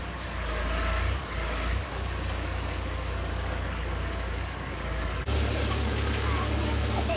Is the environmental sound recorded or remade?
remade